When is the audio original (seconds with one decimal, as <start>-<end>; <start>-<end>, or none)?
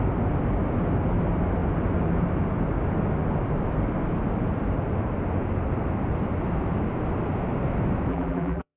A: 0.0-8.1